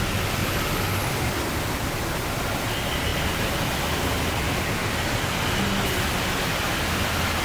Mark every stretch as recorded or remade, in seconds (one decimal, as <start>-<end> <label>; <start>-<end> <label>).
0.0-7.4 recorded

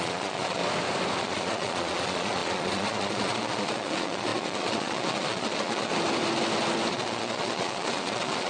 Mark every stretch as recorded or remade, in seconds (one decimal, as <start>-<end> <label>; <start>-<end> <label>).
0.0-0.6 remade; 0.6-1.2 recorded; 1.2-5.9 remade; 5.9-6.9 recorded; 6.9-8.5 remade